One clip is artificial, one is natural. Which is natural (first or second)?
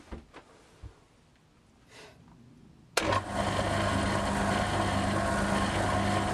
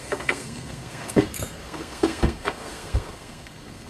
first